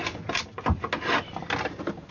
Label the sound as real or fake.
real